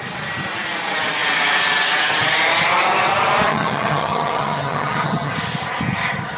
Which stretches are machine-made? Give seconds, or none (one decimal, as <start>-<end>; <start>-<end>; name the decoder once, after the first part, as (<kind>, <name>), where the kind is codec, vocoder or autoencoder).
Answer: 3.5-5.3 (vocoder, HiFi-GAN)